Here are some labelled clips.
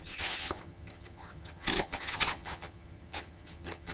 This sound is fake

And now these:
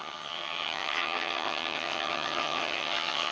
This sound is fake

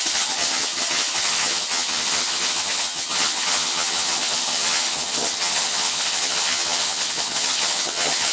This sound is fake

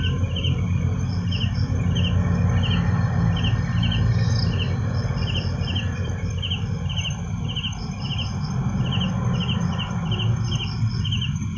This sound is real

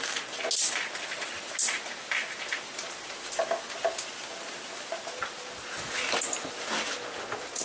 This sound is real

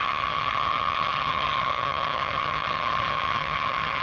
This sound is fake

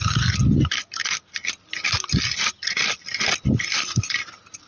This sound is real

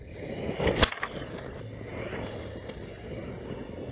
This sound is real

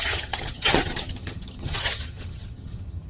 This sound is fake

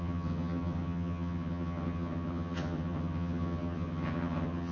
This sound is fake